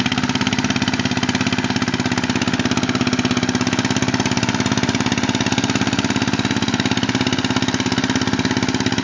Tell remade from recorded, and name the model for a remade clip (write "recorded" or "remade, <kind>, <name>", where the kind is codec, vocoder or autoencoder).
recorded